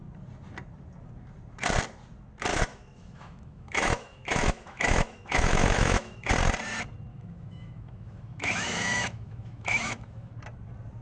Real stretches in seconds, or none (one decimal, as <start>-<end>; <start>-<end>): 0.0-2.5; 6.3-7.1; 10.3-11.0